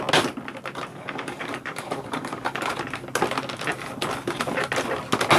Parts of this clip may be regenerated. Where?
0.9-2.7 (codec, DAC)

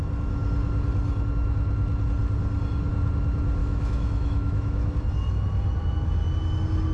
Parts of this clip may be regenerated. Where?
3.6-4.9 (autoencoder, DAC-VAE)

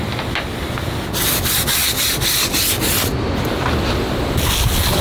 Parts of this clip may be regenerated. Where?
none

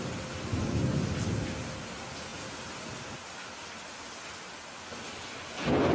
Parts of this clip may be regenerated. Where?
none

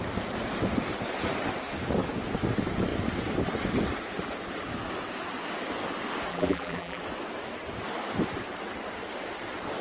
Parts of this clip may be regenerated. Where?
6.3-7.0 (vocoder, BigVGAN v2)